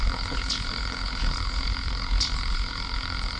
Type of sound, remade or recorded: remade